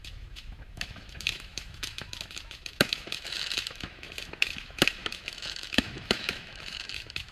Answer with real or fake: fake